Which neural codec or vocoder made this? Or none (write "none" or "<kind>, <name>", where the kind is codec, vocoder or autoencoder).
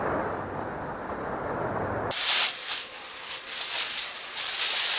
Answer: none